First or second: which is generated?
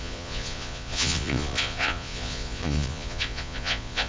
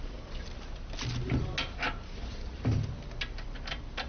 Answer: first